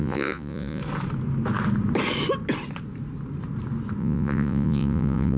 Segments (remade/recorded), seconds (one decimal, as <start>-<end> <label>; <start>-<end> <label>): 0.0-0.8 remade; 0.8-4.0 recorded; 4.0-5.4 remade